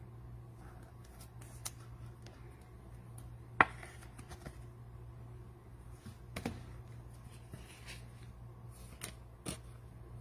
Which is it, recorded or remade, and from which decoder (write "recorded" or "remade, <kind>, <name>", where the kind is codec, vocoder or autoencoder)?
recorded